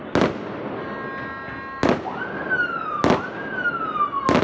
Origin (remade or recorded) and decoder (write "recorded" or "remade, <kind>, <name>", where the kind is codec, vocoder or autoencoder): recorded